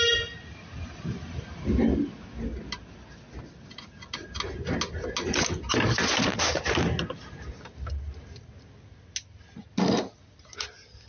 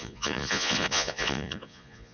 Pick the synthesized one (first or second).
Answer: second